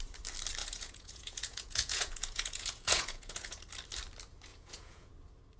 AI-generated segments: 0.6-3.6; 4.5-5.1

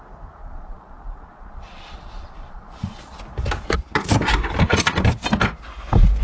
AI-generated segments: 0.4-3.2

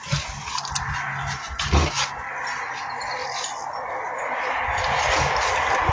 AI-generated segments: none